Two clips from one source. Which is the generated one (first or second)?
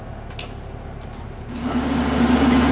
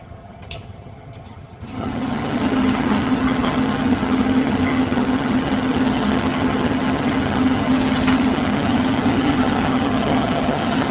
second